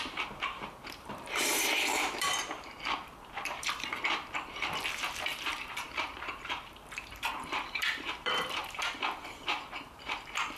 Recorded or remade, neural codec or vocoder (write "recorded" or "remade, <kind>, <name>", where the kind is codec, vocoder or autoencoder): remade, vocoder, BigVGAN v2